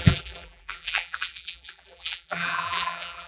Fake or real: fake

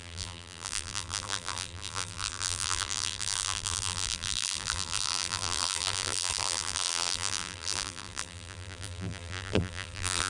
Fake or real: fake